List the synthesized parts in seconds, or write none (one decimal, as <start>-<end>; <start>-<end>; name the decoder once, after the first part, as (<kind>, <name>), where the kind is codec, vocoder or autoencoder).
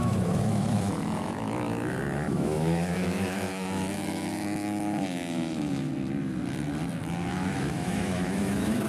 0.0-5.9 (autoencoder, DAC-VAE); 7.3-8.9